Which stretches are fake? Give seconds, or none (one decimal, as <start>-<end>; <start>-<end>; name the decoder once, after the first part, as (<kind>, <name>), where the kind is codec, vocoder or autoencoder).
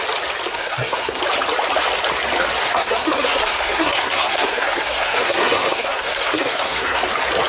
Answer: 0.5-1.2 (codec, SNAC); 2.6-7.0